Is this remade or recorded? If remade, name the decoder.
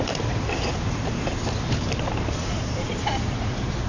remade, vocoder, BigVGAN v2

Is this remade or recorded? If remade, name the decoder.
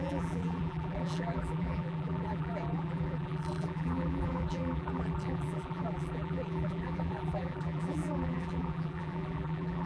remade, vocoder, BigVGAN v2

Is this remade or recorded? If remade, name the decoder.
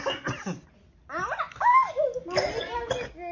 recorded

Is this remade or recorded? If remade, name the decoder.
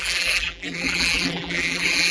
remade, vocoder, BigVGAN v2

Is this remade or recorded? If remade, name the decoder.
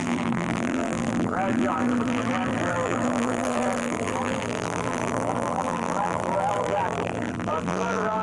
remade, vocoder, BigVGAN v2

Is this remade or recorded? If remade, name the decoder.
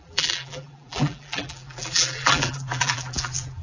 remade, vocoder, BigVGAN v2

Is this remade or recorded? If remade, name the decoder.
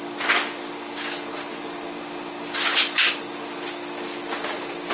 recorded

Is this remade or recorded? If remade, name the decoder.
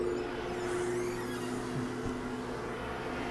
recorded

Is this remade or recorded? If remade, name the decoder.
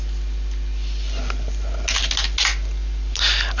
recorded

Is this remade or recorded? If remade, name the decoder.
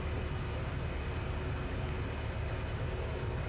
recorded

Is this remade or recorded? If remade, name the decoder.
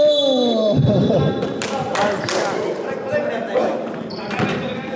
recorded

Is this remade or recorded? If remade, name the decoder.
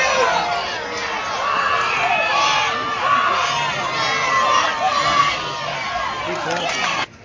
recorded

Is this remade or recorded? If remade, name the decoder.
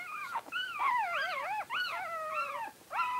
remade, vocoder, BigVGAN v2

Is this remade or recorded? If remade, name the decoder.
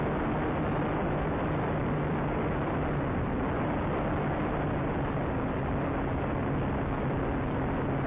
recorded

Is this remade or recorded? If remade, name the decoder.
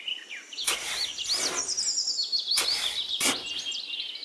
recorded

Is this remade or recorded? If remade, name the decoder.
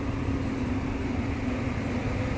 remade, vocoder, BigVGAN v2